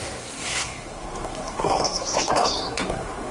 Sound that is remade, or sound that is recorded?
remade